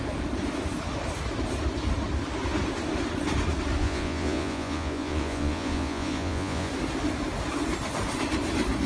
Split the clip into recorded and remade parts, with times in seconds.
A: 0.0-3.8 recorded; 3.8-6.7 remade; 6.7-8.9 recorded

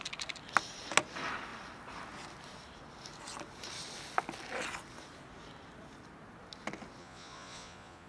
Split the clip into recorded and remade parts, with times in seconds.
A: 0.0-7.0 recorded; 7.0-8.1 remade

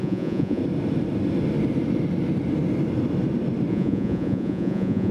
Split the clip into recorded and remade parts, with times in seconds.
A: 0.0-0.6 remade; 0.6-3.7 recorded; 3.7-5.1 remade

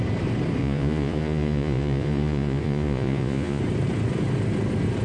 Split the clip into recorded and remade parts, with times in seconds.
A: 0.0-0.6 recorded; 0.6-3.6 remade; 3.6-5.0 recorded